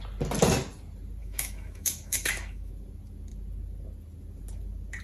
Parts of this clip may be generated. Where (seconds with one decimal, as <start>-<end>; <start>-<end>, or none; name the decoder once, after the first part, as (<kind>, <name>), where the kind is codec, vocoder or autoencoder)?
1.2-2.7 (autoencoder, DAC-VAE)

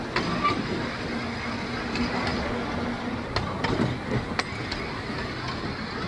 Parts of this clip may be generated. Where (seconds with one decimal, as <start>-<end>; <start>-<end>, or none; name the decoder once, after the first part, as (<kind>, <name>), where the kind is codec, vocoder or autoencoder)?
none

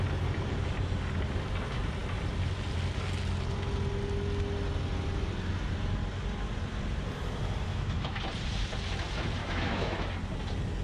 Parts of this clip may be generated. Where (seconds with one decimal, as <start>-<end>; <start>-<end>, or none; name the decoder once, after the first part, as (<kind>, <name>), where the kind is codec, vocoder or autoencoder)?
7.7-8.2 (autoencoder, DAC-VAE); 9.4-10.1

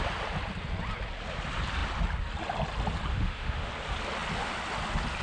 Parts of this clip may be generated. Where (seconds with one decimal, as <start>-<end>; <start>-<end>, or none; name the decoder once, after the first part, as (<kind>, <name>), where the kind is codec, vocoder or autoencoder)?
3.1-3.7 (autoencoder, DAC-VAE)

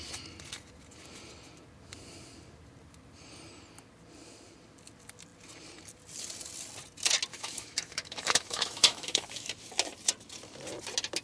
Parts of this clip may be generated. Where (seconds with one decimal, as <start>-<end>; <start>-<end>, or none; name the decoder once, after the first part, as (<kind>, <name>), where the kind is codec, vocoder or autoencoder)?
7.3-9.5 (autoencoder, DAC-VAE)

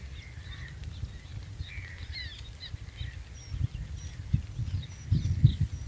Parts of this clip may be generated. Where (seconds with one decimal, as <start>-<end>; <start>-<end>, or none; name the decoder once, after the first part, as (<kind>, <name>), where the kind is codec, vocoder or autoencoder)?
none

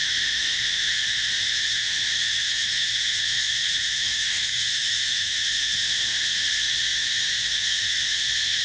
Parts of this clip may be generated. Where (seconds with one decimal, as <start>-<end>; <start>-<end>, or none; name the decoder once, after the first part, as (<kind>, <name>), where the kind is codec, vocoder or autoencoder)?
0.0-8.6 (autoencoder, DAC-VAE)

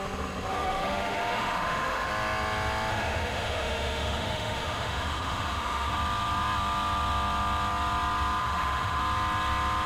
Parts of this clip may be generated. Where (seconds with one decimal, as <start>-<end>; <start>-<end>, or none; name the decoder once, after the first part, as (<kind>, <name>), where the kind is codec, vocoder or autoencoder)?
0.5-2.1 (autoencoder, DAC-VAE); 2.9-5.9; 8.4-9.0